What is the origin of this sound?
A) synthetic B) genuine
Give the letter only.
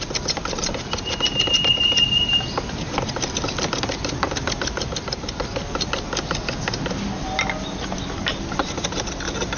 B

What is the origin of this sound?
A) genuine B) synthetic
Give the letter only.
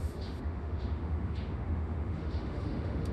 B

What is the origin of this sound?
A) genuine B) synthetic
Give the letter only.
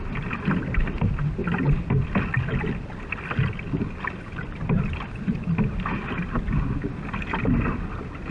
A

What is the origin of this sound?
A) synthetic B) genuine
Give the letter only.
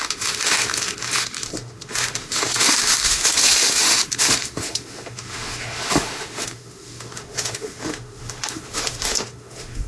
A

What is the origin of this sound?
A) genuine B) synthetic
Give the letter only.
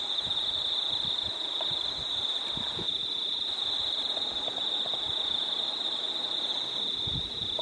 A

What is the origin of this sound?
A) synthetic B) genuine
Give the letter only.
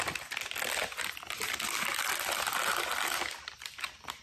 B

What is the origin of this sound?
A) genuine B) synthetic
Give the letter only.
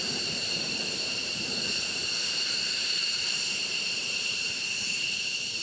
B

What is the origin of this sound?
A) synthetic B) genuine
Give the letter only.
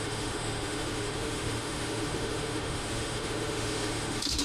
A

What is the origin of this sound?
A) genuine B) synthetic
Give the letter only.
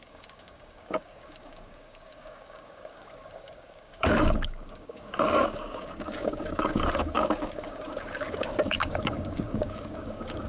B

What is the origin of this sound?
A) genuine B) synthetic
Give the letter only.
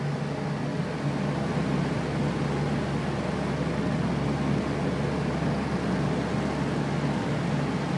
A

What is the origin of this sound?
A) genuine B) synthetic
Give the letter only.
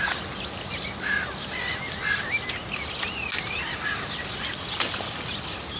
A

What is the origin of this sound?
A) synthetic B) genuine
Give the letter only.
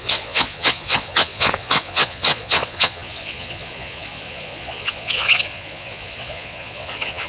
A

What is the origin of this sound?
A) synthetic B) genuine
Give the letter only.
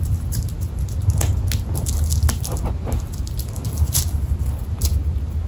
B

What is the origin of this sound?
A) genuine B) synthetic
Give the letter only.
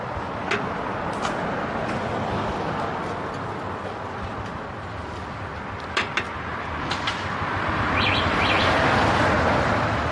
A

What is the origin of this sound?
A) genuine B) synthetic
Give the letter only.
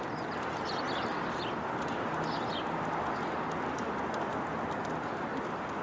A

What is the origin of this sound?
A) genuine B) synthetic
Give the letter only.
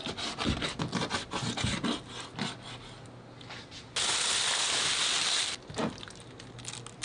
A